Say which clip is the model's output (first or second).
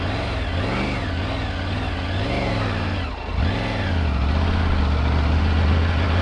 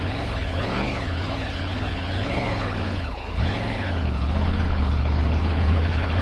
second